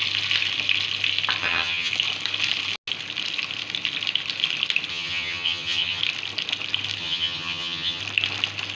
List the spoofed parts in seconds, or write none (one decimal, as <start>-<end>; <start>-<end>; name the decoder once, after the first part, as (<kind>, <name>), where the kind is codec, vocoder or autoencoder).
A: 1.4-1.9 (vocoder, HiFi-GAN); 4.9-6.0; 7.0-8.0